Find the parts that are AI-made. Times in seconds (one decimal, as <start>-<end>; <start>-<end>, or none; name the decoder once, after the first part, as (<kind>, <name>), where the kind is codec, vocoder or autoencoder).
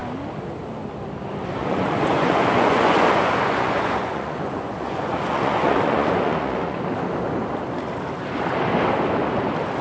1.6-6.8 (vocoder, Vocos)